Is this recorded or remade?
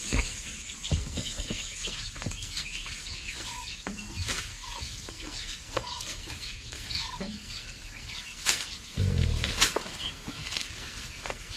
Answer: remade